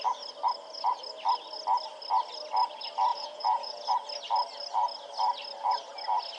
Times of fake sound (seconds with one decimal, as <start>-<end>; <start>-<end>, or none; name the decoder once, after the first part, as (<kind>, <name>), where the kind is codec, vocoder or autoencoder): 3.1-3.9 (vocoder, Vocos)